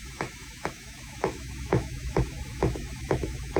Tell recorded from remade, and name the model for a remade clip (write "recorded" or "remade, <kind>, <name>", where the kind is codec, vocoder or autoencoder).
remade, autoencoder, DAC-VAE